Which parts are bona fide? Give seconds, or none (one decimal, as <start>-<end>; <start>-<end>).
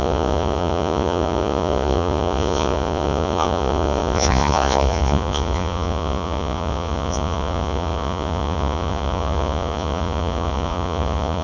none